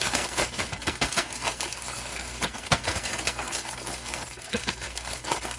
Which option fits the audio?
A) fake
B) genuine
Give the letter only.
A